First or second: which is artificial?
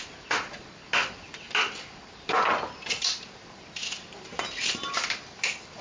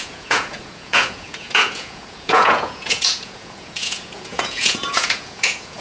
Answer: second